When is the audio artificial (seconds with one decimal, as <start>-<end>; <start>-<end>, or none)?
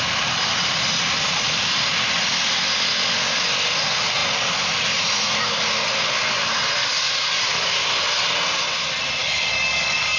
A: 6.8-7.7; 9.2-10.2